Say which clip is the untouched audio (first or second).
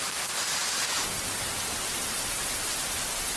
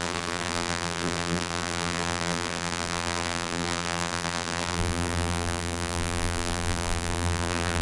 first